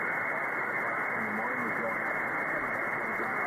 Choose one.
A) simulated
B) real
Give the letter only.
B